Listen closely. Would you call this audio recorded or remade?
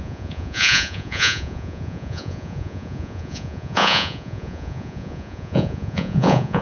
remade